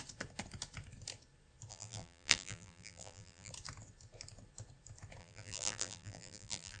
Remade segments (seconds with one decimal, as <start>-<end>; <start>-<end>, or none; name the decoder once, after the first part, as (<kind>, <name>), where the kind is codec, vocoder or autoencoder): 1.7-3.5 (vocoder, BigVGAN v2); 5.2-6.8